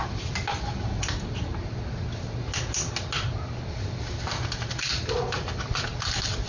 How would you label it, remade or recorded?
recorded